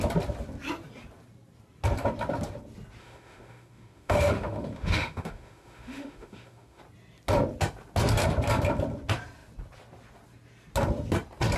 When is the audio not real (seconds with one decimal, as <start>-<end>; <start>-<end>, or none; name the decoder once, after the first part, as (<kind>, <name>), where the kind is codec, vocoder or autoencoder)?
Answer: 3.0-6.8 (autoencoder, DAC-VAE)